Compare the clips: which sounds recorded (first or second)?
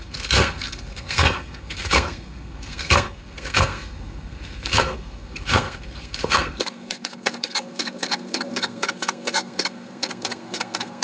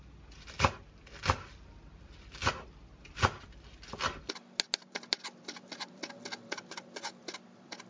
second